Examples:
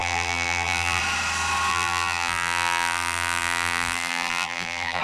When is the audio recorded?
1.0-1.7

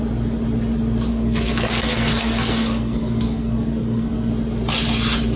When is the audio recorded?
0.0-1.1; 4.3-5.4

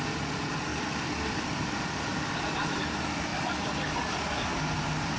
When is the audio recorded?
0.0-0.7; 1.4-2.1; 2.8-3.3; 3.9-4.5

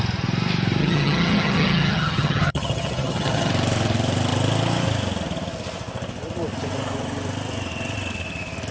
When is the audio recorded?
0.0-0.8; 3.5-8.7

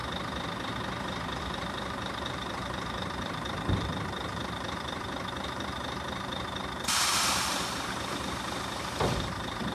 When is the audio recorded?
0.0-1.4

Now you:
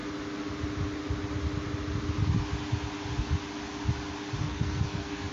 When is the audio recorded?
0.0-4.4